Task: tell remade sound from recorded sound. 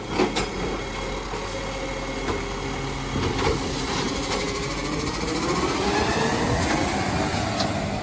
recorded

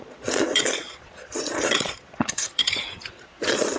remade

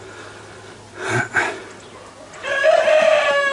recorded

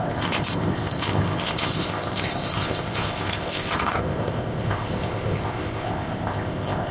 remade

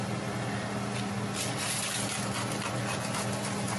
recorded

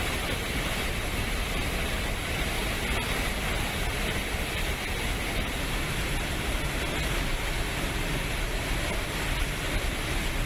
recorded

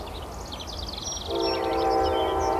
recorded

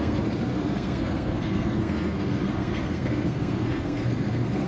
remade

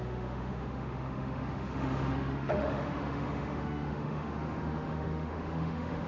remade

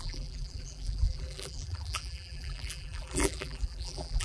remade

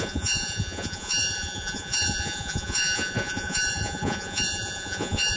remade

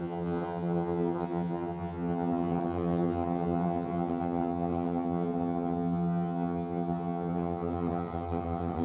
remade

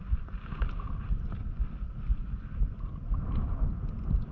recorded